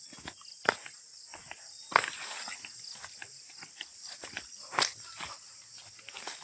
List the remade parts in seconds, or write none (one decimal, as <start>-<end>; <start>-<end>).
none